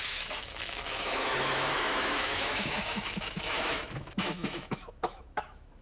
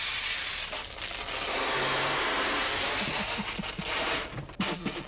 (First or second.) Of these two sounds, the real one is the second